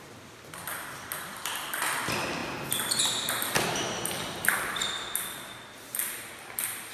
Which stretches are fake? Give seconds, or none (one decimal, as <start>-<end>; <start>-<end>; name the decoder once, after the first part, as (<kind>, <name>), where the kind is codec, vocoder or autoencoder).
6.0-6.9 (vocoder, BigVGAN v2)